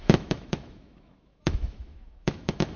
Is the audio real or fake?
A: fake